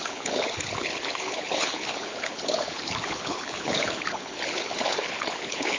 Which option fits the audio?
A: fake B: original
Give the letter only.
A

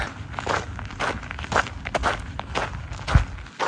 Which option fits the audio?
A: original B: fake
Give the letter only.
A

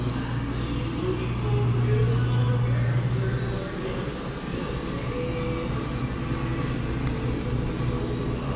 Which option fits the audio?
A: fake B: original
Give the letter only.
B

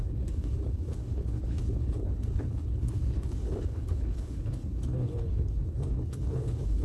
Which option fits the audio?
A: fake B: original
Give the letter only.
A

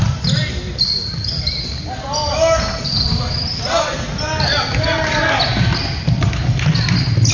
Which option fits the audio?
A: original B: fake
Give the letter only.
A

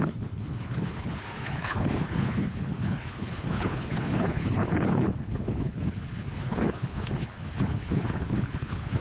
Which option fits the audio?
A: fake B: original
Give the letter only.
A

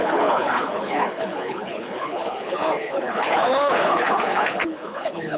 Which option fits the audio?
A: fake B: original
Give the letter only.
A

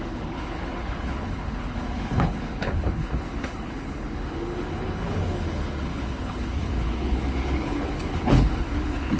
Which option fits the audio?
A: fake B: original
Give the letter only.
A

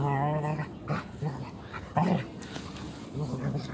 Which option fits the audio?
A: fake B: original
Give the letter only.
B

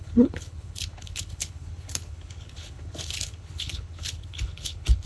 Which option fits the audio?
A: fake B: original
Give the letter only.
A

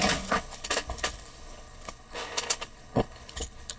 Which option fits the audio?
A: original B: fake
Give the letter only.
B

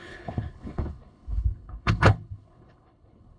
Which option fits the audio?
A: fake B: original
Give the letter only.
A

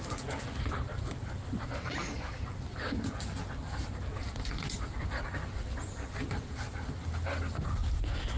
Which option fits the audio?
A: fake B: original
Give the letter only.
B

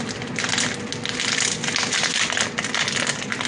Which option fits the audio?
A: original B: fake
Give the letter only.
A